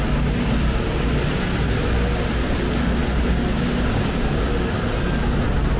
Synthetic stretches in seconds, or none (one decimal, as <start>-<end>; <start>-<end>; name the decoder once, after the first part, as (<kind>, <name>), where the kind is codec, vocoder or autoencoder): 3.0-4.7 (codec, DAC)